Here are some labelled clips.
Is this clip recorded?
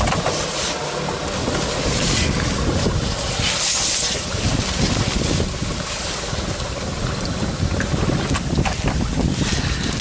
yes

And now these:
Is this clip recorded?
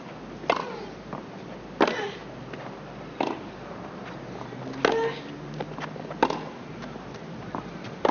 yes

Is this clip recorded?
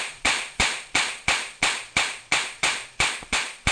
no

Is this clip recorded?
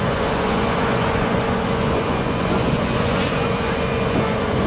no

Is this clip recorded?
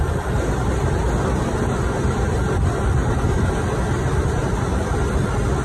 yes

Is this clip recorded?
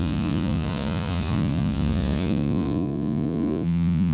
no